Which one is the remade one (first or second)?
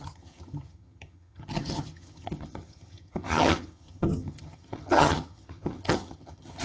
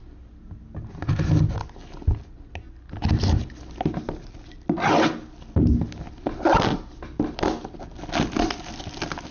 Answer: first